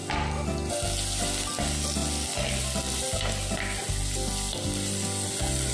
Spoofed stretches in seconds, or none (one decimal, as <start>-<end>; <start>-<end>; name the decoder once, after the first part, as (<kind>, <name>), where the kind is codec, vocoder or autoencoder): none